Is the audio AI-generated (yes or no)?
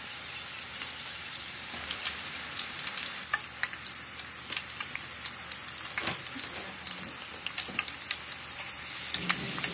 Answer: no